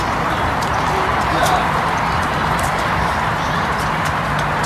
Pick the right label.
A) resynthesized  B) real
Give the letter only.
A